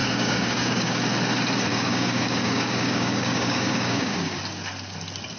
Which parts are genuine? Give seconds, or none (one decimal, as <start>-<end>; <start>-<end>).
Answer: 1.0-1.7; 4.4-5.4